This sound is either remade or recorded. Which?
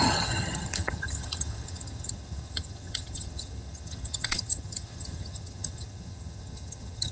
remade